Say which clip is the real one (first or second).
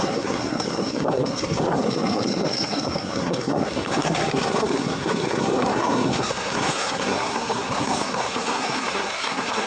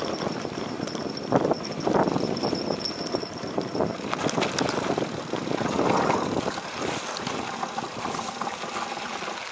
second